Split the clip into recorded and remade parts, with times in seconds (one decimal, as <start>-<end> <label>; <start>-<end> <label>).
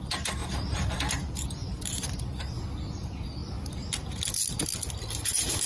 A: 0.0-1.6 recorded; 1.6-2.2 remade; 2.2-5.7 recorded